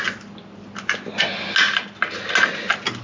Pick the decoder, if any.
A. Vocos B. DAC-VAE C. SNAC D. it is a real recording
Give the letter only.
D